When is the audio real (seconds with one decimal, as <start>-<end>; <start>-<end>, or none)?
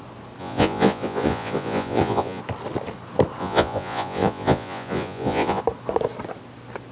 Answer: 0.0-0.4; 2.4-3.4; 5.6-6.9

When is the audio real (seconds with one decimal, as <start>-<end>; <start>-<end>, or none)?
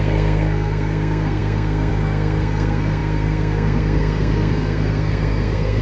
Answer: none